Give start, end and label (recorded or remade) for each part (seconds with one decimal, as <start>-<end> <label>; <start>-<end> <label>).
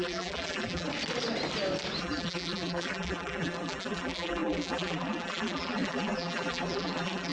0.0-0.9 remade; 0.9-2.0 recorded; 2.0-7.3 remade